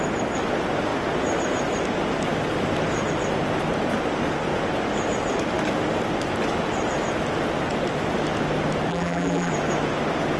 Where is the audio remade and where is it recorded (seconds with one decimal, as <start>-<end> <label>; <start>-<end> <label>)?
0.0-8.9 recorded; 8.9-9.5 remade; 9.5-10.4 recorded